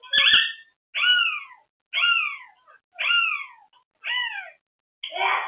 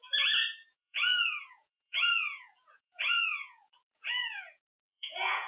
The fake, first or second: second